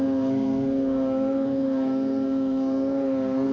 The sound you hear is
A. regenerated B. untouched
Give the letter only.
A